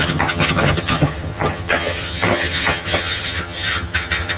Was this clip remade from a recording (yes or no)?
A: yes